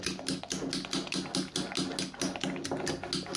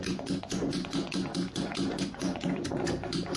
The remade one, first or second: second